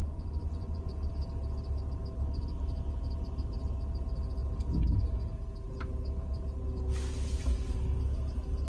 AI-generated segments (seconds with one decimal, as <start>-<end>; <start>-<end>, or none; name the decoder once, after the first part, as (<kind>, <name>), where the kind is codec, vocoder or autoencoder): 0.0-1.1 (vocoder, Vocos)